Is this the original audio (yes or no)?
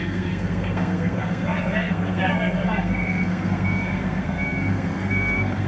no